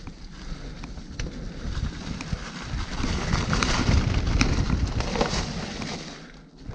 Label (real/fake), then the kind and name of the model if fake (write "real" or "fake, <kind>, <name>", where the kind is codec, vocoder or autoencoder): real